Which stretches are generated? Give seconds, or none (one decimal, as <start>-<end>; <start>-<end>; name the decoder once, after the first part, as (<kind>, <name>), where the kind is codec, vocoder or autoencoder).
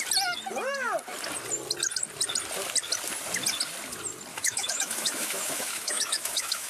4.3-6.7 (autoencoder, DAC-VAE)